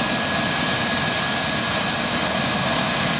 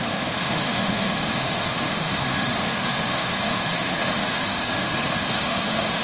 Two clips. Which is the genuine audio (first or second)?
first